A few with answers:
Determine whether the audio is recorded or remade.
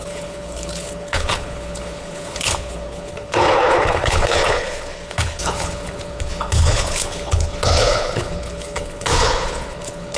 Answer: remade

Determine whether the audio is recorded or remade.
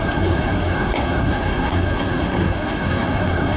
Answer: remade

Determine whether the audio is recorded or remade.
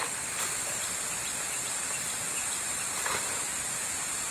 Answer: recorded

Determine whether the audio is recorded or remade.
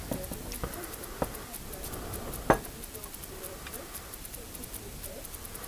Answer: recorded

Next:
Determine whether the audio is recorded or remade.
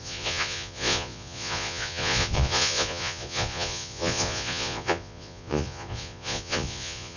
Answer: remade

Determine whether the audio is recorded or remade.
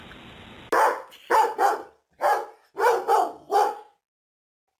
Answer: recorded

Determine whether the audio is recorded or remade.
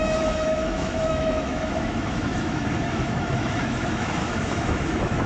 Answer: remade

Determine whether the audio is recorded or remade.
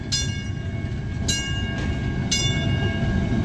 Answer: recorded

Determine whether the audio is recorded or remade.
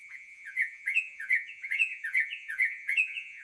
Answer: remade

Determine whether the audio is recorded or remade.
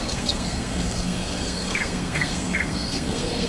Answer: remade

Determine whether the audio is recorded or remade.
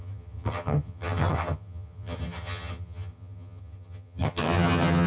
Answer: remade